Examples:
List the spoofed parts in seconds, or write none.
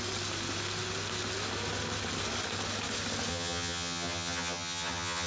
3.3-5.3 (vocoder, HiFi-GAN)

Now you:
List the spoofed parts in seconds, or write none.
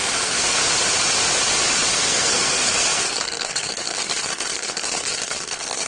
0.0-0.6 (codec, SNAC); 1.9-5.9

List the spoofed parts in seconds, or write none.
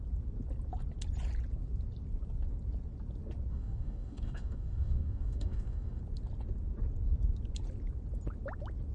3.5-6.0 (codec, DAC)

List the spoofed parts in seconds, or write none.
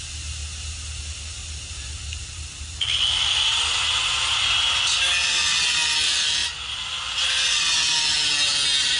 none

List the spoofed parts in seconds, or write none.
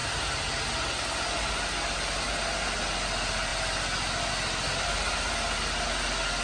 none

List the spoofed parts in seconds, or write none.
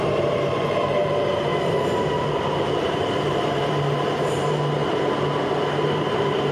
0.0-1.5 (vocoder, BigVGAN v2); 2.8-4.8; 5.7-6.5